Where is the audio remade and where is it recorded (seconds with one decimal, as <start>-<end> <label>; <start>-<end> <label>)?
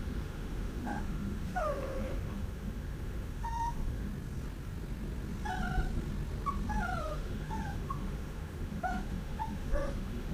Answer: 0.0-4.1 remade; 4.1-7.0 recorded; 7.0-10.3 remade